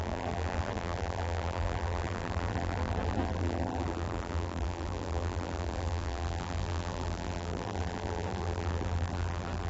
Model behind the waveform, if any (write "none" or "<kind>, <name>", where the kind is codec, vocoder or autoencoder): vocoder, BigVGAN v2